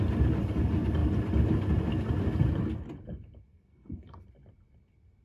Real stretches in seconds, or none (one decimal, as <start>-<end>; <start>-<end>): 0.0-3.5; 4.2-5.2